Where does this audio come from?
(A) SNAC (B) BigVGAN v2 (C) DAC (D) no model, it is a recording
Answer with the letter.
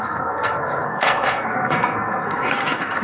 A